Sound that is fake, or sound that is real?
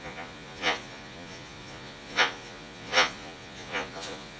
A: fake